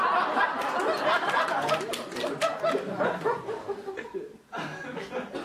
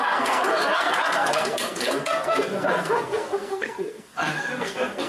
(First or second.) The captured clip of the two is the first